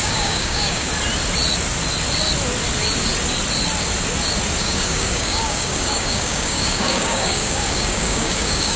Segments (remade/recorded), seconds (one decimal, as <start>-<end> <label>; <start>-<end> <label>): 0.0-0.9 remade; 0.9-4.6 recorded; 4.6-8.8 remade